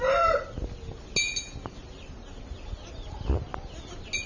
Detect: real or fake real